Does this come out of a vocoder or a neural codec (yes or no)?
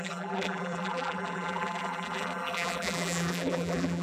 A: yes